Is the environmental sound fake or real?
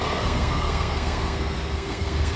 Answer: fake